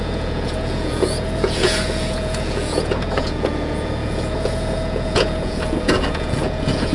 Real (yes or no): no